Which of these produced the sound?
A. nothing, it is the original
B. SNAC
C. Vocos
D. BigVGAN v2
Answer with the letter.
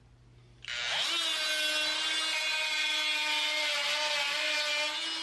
A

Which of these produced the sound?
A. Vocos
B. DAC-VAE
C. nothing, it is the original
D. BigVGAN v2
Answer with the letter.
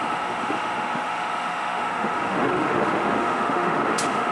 B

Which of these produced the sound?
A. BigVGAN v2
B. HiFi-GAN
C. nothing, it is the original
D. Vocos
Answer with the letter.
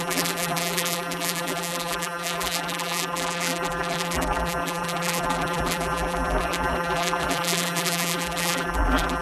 A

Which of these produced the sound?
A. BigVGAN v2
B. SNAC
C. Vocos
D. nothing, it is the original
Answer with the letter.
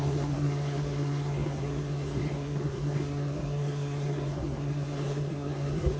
B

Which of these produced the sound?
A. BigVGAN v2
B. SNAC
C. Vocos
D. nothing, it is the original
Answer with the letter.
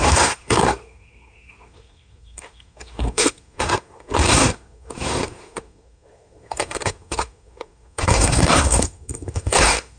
B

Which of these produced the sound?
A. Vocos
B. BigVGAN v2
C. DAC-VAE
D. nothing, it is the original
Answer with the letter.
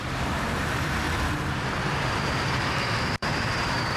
B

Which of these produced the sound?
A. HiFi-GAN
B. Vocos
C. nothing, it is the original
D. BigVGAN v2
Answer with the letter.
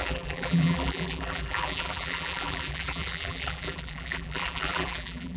D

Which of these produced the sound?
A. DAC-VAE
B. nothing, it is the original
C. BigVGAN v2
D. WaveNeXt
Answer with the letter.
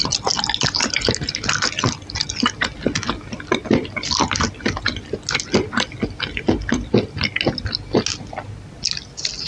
B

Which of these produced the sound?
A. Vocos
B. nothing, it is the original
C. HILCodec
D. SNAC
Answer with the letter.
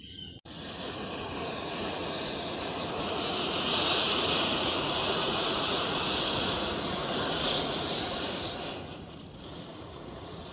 A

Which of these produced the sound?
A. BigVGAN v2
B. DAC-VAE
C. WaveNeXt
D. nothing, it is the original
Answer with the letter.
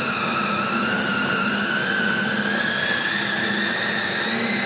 D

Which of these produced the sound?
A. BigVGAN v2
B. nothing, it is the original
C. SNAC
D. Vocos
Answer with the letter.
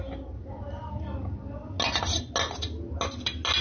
B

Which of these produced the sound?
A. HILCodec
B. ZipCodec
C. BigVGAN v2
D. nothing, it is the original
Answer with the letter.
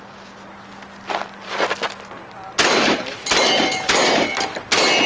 D